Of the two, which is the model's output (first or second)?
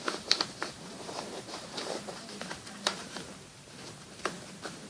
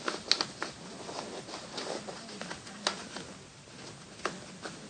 first